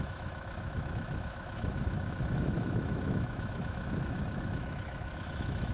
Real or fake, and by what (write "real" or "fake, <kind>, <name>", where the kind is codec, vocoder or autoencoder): fake, autoencoder, DAC-VAE